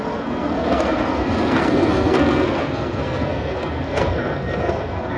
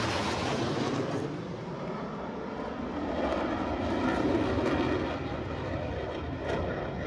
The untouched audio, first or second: second